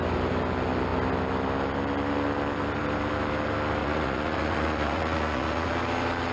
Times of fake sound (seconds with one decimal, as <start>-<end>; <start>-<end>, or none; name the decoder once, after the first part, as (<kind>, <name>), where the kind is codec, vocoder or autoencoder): 3.8-5.7 (vocoder, Vocos)